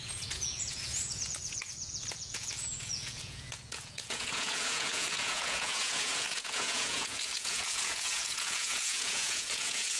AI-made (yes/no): yes